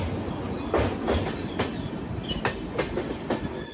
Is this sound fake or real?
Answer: real